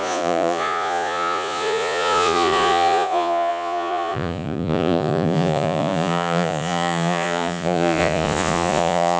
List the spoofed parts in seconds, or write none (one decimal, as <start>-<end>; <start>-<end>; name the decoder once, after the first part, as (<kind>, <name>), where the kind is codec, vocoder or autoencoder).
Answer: 0.0-9.2 (vocoder, Vocos)